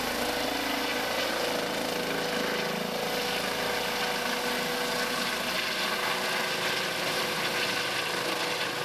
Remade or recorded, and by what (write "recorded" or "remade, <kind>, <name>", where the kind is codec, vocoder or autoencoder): recorded